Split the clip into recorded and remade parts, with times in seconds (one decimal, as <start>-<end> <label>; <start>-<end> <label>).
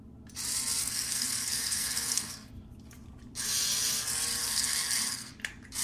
0.0-0.8 recorded; 0.8-2.5 remade; 2.5-4.4 recorded; 4.4-5.3 remade; 5.3-5.8 recorded